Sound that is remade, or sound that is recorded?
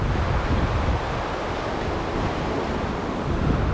recorded